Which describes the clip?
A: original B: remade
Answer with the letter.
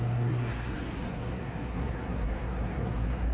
B